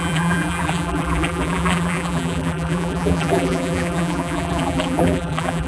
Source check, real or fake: fake